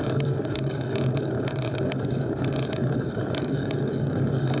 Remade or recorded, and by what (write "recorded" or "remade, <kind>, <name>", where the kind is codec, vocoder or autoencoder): remade, codec, DAC